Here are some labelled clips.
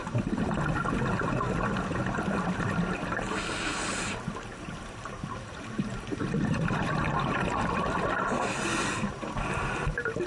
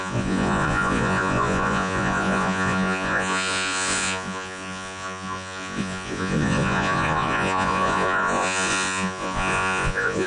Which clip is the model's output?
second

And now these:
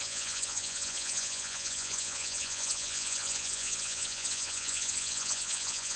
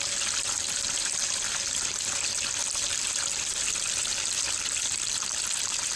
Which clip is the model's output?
first